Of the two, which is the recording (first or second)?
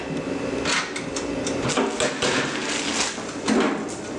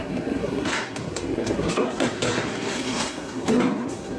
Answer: first